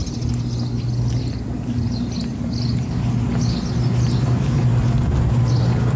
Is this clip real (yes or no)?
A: yes